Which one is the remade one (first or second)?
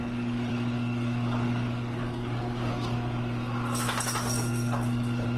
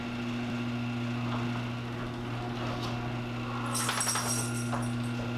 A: first